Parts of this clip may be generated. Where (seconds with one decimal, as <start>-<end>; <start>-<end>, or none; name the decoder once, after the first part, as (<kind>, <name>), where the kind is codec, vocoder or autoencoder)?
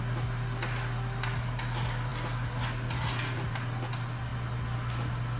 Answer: none